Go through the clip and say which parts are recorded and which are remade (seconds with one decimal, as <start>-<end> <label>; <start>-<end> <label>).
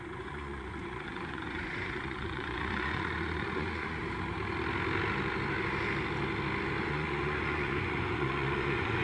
0.0-4.0 remade; 4.0-6.8 recorded; 6.8-9.0 remade